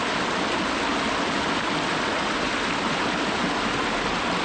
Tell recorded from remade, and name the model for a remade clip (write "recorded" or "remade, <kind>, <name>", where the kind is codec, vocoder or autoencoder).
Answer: recorded